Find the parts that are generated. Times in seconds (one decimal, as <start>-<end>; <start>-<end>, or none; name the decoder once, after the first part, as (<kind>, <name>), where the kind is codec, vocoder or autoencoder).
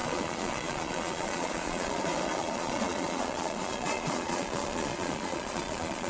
0.0-6.1 (vocoder, Vocos)